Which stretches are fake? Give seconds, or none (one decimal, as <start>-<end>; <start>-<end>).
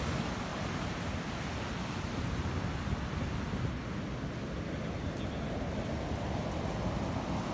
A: 0.5-2.5